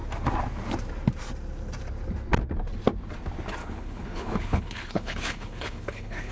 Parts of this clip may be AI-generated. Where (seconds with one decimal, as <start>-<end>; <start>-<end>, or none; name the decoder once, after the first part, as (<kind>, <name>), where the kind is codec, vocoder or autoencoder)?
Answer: 3.6-6.3 (codec, HILCodec)

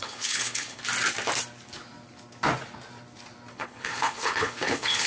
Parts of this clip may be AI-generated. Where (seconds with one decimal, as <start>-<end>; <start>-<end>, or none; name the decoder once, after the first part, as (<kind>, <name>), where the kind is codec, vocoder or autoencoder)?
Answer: 0.0-0.8 (codec, HILCodec); 3.5-5.1

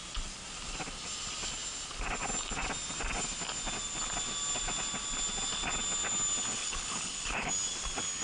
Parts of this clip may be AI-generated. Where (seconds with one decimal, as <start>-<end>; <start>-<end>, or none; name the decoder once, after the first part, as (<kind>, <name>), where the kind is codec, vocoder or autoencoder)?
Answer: 6.6-7.5 (codec, HILCodec)

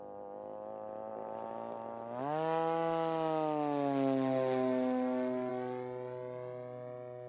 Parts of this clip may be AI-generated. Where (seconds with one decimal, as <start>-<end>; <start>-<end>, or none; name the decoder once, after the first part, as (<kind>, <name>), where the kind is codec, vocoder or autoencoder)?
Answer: none